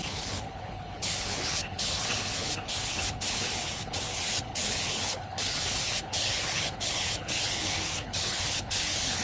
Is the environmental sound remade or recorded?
remade